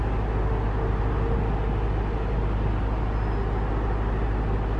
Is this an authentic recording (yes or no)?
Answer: yes